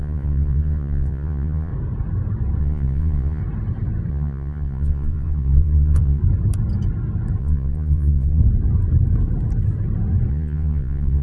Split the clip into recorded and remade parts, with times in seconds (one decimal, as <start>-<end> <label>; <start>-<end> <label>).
0.0-1.7 remade; 1.7-2.6 recorded; 2.6-3.4 remade; 3.4-4.1 recorded; 4.1-6.2 remade; 6.2-7.4 recorded; 7.4-8.4 remade; 8.4-10.3 recorded; 10.3-11.2 remade